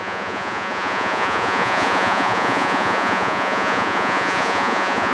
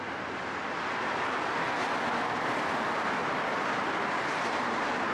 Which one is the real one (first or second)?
second